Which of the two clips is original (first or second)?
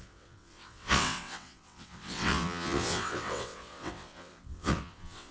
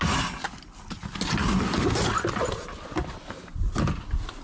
second